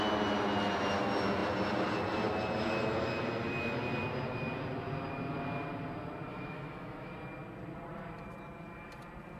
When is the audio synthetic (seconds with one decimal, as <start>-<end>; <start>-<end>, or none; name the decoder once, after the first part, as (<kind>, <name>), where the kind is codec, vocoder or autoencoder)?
6.3-7.1 (autoencoder, DAC-VAE)